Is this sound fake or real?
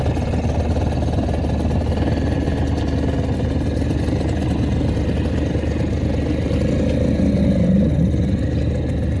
real